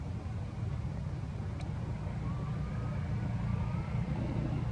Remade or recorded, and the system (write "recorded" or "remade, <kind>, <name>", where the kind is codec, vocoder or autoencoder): recorded